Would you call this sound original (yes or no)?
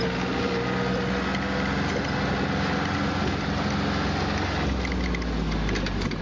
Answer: yes